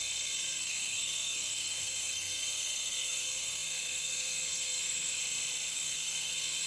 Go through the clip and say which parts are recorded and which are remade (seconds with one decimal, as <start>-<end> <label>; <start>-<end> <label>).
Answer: 0.0-5.2 remade; 5.2-5.7 recorded; 5.7-6.7 remade